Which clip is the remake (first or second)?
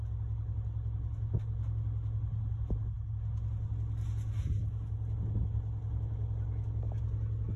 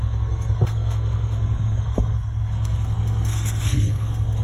second